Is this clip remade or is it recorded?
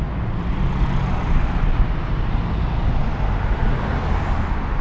recorded